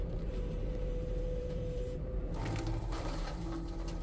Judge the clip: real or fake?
fake